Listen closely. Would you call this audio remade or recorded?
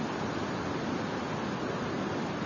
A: recorded